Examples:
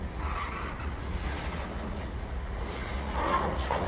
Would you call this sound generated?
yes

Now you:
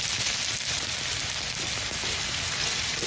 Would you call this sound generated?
no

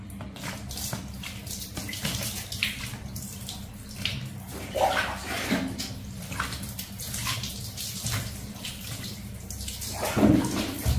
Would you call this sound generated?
yes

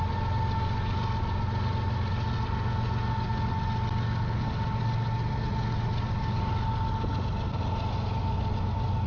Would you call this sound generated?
no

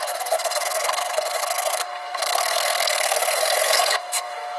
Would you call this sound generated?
yes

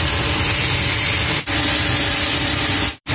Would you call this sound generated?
no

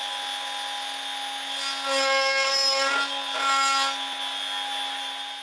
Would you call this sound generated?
no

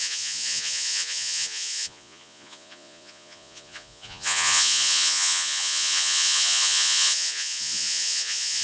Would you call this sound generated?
yes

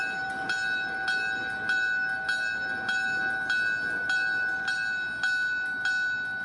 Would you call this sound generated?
no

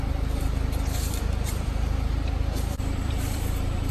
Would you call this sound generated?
yes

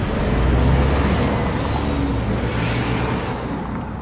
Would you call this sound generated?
no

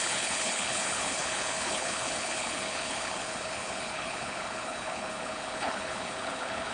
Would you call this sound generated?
yes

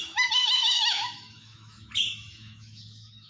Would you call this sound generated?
yes